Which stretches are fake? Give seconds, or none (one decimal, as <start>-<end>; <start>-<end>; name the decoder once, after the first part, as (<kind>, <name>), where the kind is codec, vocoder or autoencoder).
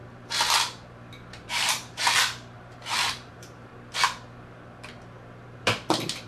1.5-3.7 (vocoder, BigVGAN v2); 5.6-6.3